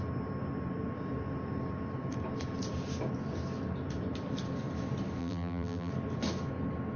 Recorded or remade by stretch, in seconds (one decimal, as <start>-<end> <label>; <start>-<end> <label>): 0.0-5.2 recorded; 5.2-5.9 remade; 5.9-7.0 recorded

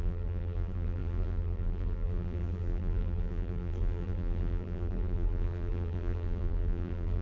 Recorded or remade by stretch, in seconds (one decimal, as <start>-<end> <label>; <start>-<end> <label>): 0.0-7.2 remade

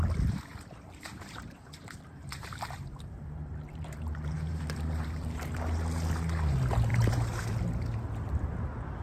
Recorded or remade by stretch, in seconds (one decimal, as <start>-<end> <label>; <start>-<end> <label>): 0.0-0.5 recorded; 0.5-5.4 remade; 5.4-6.9 recorded; 6.9-7.6 remade; 7.6-9.0 recorded

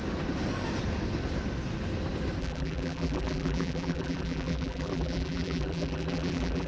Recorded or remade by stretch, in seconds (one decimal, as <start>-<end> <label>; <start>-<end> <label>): 0.0-2.4 recorded; 2.4-6.7 remade

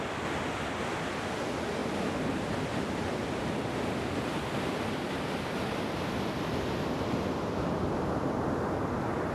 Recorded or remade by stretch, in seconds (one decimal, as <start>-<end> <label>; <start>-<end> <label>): 0.0-9.3 recorded